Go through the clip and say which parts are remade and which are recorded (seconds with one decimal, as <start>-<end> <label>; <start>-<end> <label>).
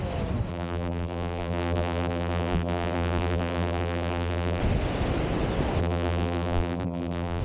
0.0-0.5 recorded; 0.5-4.6 remade; 4.6-5.8 recorded; 5.8-7.4 remade